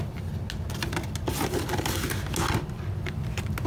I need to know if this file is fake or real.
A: real